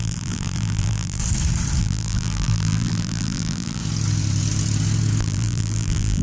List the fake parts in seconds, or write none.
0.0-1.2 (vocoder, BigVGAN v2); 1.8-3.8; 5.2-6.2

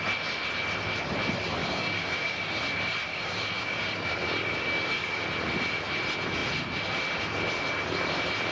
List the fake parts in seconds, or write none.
1.6-2.6 (codec, DAC); 3.1-5.2

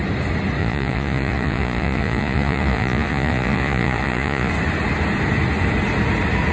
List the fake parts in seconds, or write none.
0.6-4.5 (vocoder, Vocos)

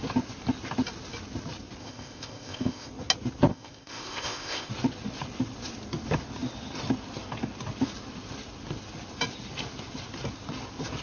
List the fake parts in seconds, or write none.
1.8-2.9 (codec, ZipCodec); 3.5-4.7

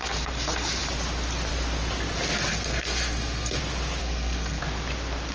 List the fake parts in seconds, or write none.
2.5-3.6 (codec, SNAC); 4.0-4.6

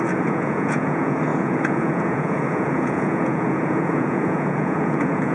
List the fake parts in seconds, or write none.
0.0-5.3 (vocoder, Vocos)

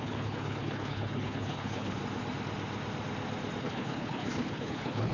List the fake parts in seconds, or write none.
0.0-2.0 (codec, HILCodec); 3.6-5.1

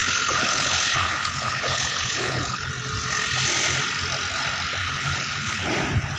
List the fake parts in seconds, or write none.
0.0-2.7 (codec, HILCodec); 4.8-5.7